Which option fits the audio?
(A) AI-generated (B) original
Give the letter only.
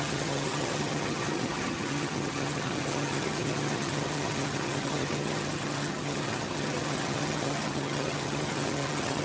A